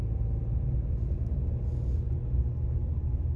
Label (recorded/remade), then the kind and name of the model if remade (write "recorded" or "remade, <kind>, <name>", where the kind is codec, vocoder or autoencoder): recorded